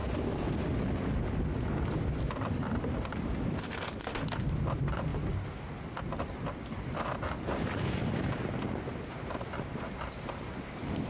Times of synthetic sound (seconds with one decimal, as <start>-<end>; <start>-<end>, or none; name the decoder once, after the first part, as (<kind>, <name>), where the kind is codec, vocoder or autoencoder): none

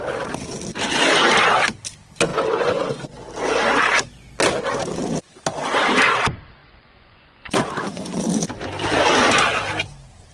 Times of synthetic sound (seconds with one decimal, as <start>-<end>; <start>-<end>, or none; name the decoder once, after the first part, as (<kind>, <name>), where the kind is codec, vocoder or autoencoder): 2.3-3.3 (vocoder, Vocos); 6.6-8.2

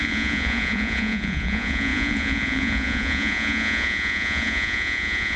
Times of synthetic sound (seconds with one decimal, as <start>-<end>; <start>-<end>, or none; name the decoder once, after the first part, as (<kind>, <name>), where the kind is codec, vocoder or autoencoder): 0.0-5.4 (vocoder, Vocos)

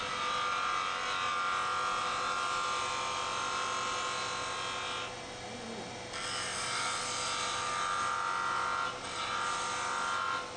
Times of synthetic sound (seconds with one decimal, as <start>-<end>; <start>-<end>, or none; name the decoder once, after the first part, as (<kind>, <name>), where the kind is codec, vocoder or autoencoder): none